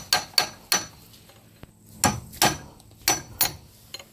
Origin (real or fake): real